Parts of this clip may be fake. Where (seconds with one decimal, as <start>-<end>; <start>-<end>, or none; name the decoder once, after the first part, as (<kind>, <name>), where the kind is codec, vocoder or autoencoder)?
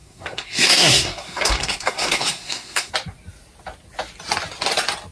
0.0-2.9 (codec, SNAC)